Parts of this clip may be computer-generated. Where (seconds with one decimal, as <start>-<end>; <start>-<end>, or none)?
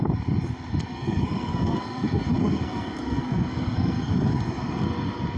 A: 0.9-4.1